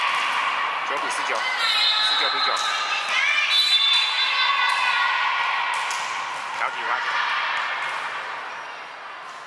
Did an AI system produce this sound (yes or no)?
no